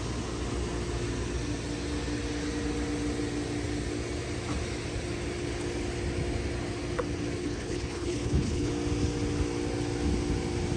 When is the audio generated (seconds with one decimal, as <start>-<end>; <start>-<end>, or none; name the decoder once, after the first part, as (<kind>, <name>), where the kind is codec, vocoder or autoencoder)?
7.4-8.7 (codec, HILCodec)